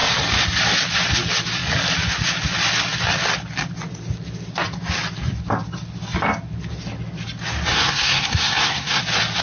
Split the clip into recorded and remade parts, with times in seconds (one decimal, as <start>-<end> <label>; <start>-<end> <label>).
0.0-7.7 recorded; 7.7-9.0 remade; 9.0-9.4 recorded